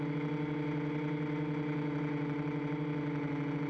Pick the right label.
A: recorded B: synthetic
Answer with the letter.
A